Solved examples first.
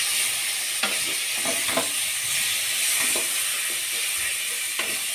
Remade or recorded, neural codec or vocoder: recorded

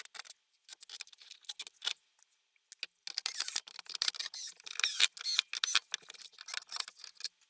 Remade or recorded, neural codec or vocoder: recorded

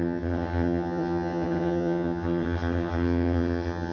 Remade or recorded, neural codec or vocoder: remade, vocoder, HiFi-GAN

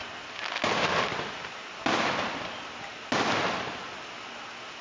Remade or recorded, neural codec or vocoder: recorded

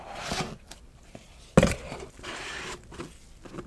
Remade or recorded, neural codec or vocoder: recorded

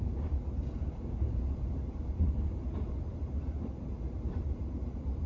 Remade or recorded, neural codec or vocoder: remade, vocoder, BigVGAN v2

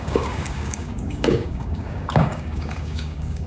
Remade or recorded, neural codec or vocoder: remade, codec, DAC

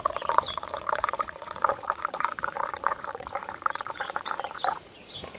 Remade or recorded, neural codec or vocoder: remade, vocoder, Vocos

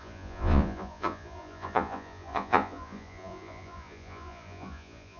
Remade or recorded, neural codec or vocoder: remade, vocoder, Vocos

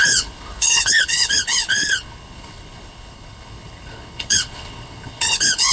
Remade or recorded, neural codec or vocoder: remade, codec, HILCodec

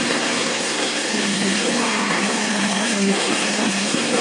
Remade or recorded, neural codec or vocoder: remade, codec, SNAC